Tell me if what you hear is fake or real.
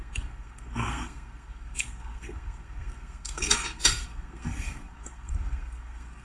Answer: fake